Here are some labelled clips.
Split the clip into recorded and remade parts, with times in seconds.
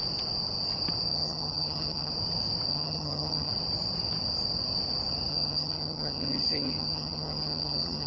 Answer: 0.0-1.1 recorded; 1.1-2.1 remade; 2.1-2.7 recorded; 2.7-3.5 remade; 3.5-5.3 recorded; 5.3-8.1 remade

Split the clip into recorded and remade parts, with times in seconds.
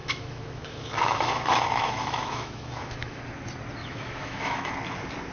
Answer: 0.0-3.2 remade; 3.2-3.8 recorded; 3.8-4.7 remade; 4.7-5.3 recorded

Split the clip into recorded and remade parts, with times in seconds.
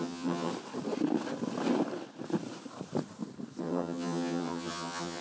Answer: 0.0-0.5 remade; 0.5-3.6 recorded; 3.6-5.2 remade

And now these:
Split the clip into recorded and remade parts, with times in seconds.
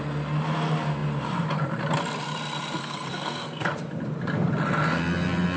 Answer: 0.0-2.8 recorded; 2.8-3.7 remade; 3.7-5.6 recorded